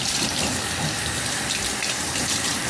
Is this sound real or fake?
fake